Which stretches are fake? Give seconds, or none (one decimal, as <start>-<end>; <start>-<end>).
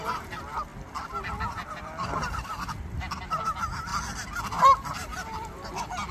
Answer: 0.0-0.7; 1.3-3.9; 4.6-5.1